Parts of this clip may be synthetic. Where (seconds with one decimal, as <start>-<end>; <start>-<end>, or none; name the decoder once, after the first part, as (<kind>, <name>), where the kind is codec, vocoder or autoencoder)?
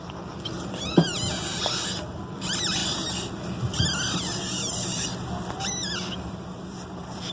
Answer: none